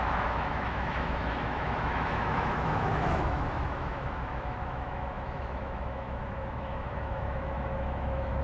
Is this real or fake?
fake